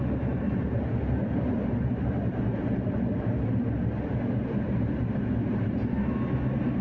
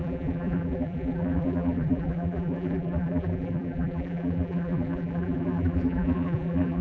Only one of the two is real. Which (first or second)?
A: first